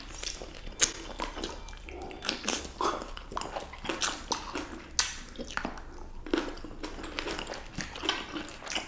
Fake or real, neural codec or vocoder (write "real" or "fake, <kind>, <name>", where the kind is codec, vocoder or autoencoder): real